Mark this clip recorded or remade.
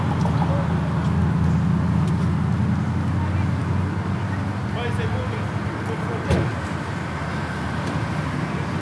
recorded